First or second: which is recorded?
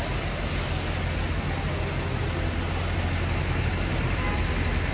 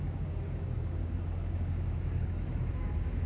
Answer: first